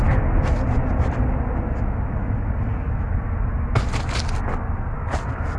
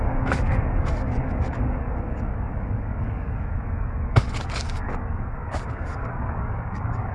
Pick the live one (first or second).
first